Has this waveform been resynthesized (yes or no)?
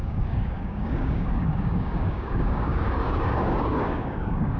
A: yes